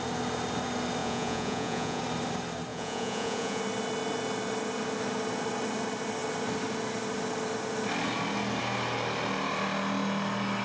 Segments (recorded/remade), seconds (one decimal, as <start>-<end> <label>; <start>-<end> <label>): 0.0-1.0 recorded; 1.0-2.0 remade; 2.0-2.7 recorded; 2.7-3.6 remade; 3.6-10.6 recorded